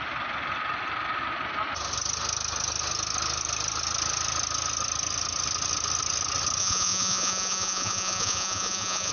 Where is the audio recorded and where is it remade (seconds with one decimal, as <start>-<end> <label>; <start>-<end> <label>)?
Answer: 0.0-6.6 recorded; 6.6-9.1 remade